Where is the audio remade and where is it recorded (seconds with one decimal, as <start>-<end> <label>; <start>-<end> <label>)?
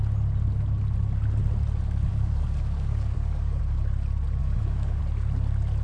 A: 0.0-2.1 recorded; 2.1-3.6 remade; 3.6-4.4 recorded; 4.4-5.0 remade; 5.0-5.8 recorded